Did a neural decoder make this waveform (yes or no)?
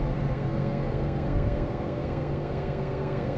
yes